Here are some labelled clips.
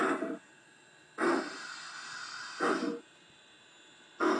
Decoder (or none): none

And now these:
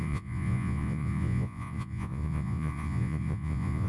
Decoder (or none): vocoder, Vocos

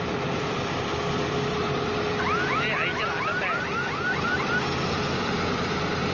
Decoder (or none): none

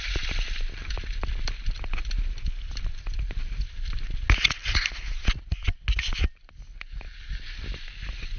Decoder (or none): none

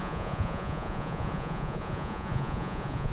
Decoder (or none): vocoder, Vocos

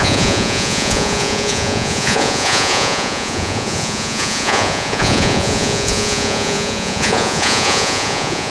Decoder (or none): vocoder, Vocos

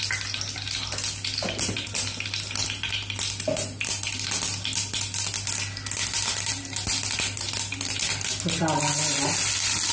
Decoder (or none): none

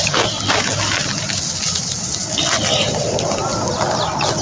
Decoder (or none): none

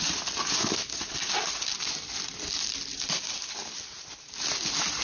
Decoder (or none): none